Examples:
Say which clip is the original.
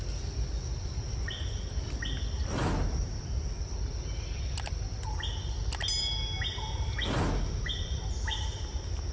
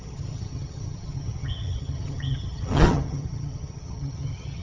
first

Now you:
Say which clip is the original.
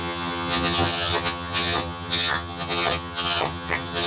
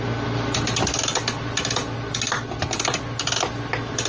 second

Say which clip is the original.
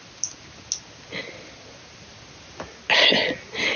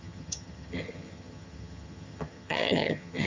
first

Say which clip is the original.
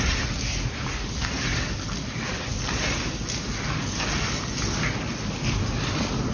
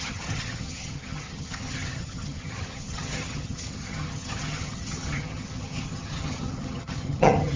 first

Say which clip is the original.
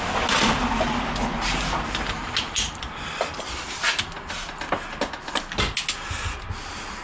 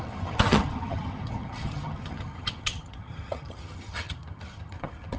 first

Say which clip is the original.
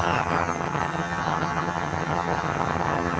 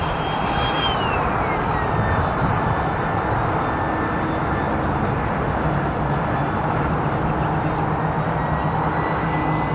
second